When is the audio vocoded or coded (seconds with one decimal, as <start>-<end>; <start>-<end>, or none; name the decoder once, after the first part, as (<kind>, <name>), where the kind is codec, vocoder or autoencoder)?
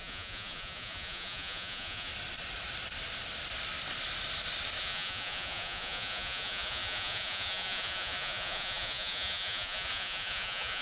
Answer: 0.0-2.1 (vocoder, Vocos); 4.8-10.8